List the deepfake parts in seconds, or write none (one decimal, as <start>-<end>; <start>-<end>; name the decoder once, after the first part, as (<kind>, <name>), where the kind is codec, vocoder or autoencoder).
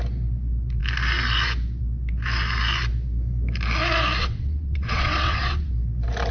4.2-5.7 (vocoder, WaveNeXt)